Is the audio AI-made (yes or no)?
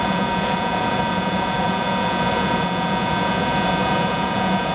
yes